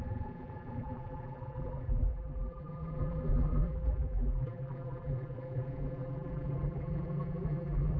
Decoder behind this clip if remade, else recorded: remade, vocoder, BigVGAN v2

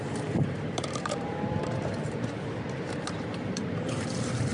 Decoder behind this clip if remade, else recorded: remade, vocoder, BigVGAN v2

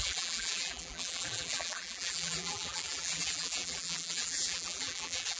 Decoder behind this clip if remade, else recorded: remade, vocoder, BigVGAN v2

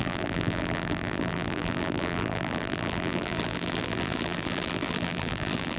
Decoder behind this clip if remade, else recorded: remade, vocoder, BigVGAN v2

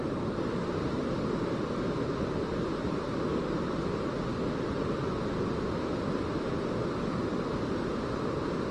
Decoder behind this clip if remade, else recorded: recorded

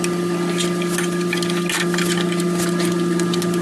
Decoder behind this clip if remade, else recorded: recorded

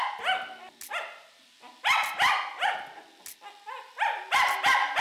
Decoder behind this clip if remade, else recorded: recorded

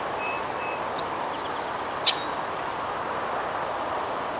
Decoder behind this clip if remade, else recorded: recorded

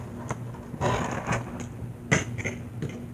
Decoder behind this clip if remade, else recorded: recorded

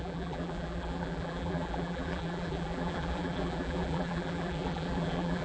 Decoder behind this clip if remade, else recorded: remade, vocoder, BigVGAN v2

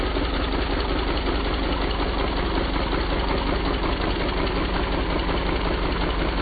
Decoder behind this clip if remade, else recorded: recorded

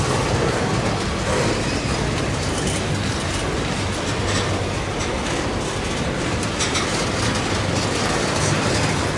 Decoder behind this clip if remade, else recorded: recorded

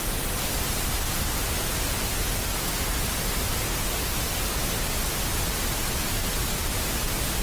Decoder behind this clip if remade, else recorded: recorded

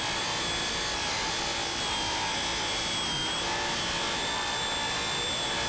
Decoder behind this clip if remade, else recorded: recorded